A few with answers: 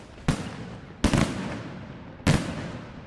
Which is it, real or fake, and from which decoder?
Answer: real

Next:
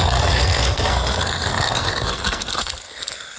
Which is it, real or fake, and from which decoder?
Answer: fake, codec, SNAC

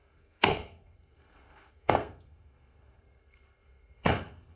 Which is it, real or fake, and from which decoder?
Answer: fake, codec, SNAC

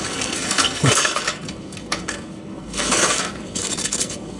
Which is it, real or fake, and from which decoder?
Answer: fake, codec, SNAC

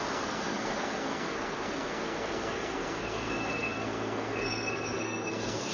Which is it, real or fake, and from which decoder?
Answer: fake, codec, SNAC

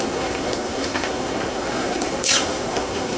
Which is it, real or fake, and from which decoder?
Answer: fake, codec, SNAC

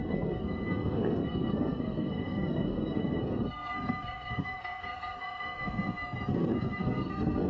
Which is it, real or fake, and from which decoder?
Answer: fake, codec, SNAC